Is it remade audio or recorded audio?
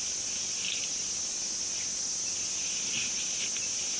recorded